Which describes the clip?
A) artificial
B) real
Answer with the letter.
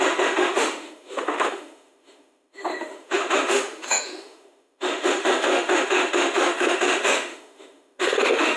A